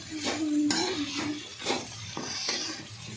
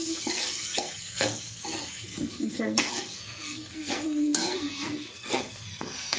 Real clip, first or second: first